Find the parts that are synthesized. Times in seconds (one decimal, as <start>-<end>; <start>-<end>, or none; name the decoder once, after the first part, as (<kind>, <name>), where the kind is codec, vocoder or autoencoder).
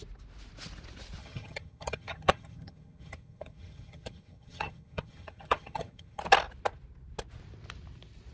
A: 1.2-6.2 (vocoder, HiFi-GAN)